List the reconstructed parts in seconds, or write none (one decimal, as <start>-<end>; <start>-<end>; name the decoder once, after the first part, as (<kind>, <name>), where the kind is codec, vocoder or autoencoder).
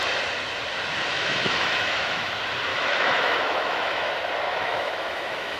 1.1-2.3 (autoencoder, DAC-VAE); 2.7-4.1; 4.5-5.6